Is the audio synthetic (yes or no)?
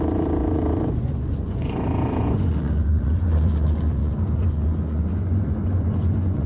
yes